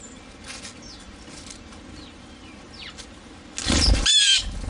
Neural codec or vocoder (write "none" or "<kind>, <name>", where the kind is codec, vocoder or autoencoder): none